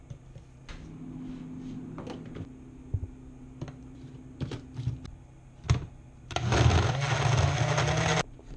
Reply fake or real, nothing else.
real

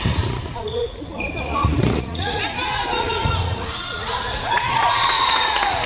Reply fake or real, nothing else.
fake